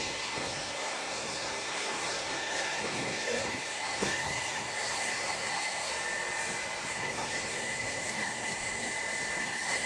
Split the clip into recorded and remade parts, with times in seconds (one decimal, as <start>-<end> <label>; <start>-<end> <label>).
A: 0.0-5.9 remade; 5.9-6.9 recorded; 6.9-8.9 remade; 8.9-9.4 recorded; 9.4-9.9 remade